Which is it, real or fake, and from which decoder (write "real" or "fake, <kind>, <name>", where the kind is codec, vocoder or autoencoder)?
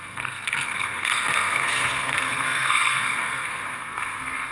fake, codec, SNAC